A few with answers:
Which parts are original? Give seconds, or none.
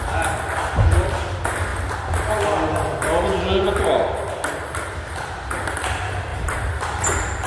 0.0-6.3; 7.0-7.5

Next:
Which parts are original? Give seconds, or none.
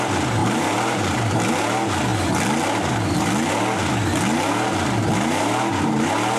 0.0-0.4; 1.5-6.4